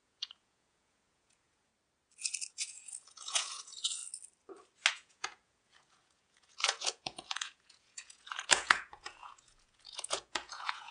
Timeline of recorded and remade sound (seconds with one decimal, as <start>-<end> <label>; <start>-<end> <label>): 0.0-1.7 remade; 1.7-2.5 recorded; 2.5-4.0 remade; 4.0-4.9 recorded; 4.9-10.9 remade